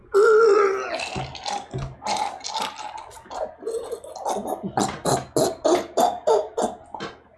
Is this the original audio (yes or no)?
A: yes